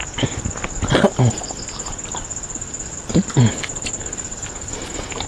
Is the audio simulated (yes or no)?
no